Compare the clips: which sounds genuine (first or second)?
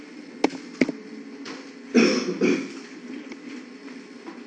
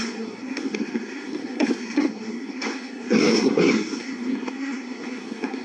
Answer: first